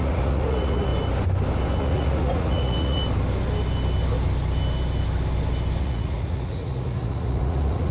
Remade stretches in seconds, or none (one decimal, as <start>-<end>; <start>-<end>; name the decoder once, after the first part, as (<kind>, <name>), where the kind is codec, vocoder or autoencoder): 0.0-0.9 (vocoder, Vocos); 1.8-3.0; 5.8-7.9